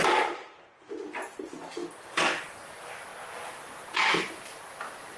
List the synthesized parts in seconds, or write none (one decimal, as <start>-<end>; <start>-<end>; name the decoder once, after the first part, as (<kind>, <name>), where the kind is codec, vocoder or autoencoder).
none